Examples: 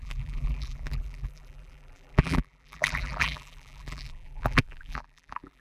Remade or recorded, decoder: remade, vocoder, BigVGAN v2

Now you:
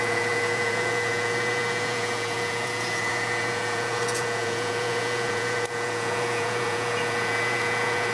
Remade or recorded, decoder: remade, vocoder, Vocos